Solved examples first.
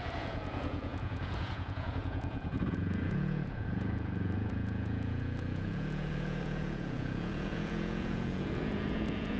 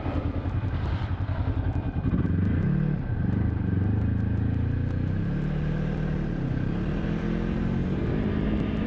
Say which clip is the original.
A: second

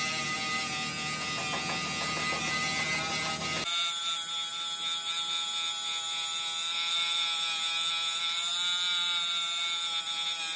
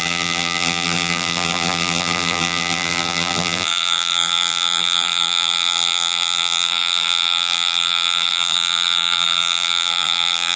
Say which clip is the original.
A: first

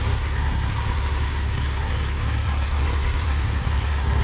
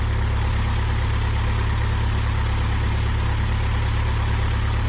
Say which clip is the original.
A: second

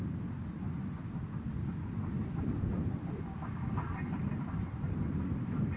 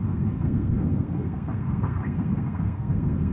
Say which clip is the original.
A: first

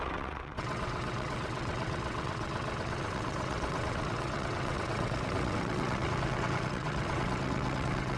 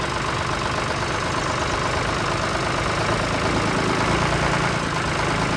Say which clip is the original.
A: second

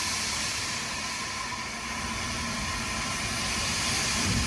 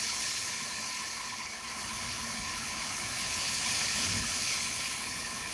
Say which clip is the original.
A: first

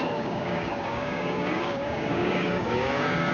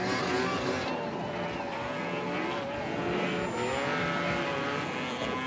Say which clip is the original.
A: second